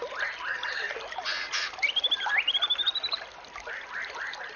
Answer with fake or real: real